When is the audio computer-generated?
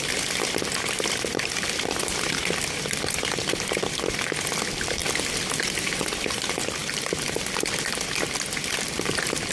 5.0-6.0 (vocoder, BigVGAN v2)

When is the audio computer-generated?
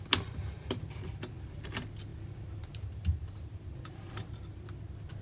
none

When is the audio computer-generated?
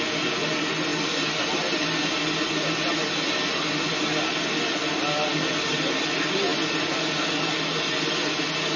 none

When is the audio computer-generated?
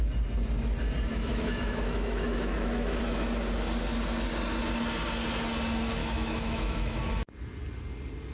1.1-3.0 (autoencoder, DAC-VAE); 6.0-7.0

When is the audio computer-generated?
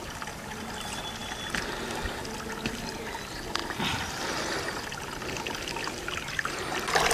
none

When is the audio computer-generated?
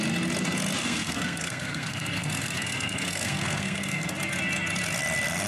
0.8-4.1 (codec, SNAC)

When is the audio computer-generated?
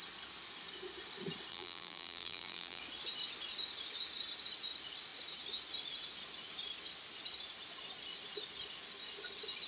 1.5-2.8 (vocoder, BigVGAN v2)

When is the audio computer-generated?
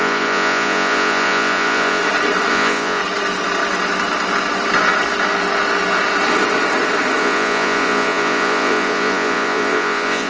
0.0-2.0 (vocoder, Vocos); 2.5-3.0; 7.2-10.3